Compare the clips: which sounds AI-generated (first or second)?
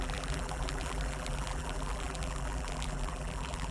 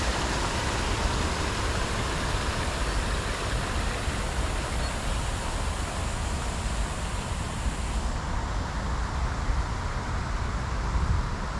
first